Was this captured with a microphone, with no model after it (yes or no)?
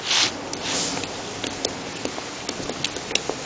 yes